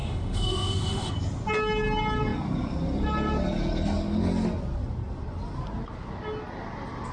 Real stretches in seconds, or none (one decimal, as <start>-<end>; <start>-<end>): 1.1-7.1